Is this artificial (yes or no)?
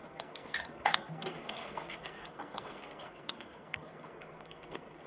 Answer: yes